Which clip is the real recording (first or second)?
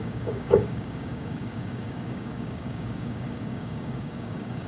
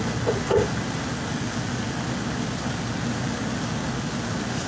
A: second